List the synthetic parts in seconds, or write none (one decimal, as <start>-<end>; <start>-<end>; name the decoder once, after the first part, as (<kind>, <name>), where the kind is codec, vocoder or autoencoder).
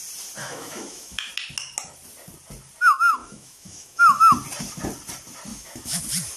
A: 0.4-1.3 (autoencoder, DAC-VAE); 3.2-4.2; 5.5-6.0